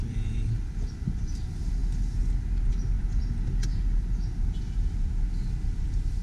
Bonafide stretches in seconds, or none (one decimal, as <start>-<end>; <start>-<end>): 1.8-5.5